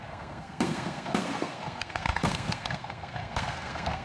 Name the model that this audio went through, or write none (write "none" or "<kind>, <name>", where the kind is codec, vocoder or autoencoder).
codec, SNAC